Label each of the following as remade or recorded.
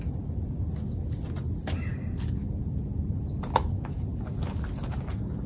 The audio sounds recorded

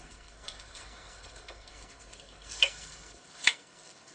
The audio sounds remade